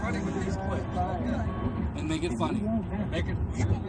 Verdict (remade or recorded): recorded